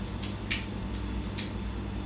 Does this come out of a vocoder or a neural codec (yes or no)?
no